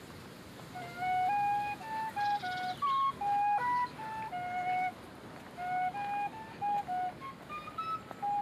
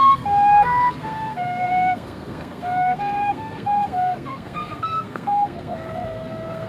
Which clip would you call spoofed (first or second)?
second